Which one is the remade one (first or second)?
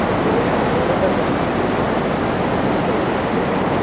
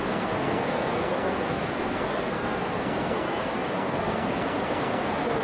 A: second